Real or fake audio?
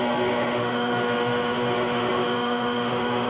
fake